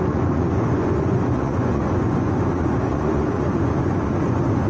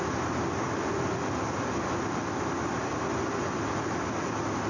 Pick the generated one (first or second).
first